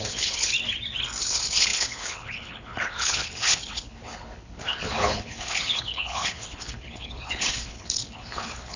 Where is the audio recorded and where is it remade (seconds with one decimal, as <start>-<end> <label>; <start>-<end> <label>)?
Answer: 0.0-0.5 remade; 0.5-1.2 recorded; 1.2-8.8 remade